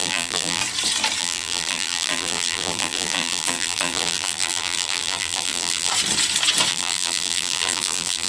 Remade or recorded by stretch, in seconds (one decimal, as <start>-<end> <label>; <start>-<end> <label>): 0.0-0.6 remade; 0.6-1.2 recorded; 1.2-5.9 remade; 5.9-6.7 recorded; 6.7-8.3 remade